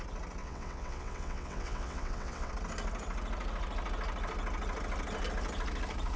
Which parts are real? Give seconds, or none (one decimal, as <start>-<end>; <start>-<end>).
0.0-0.4; 2.5-6.2